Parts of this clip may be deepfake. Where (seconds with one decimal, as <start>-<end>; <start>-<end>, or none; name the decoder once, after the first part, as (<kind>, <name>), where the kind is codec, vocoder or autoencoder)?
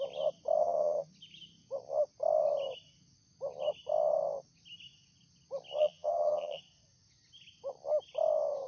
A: 0.6-1.1 (vocoder, HiFi-GAN); 5.8-6.6